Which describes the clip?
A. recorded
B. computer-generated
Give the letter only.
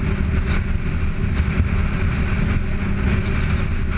A